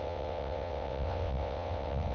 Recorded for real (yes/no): no